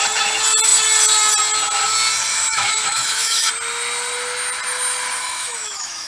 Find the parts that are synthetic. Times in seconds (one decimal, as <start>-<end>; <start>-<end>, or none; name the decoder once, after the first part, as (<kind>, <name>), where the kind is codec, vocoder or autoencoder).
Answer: 2.3-3.5 (autoencoder, DAC-VAE); 5.2-6.1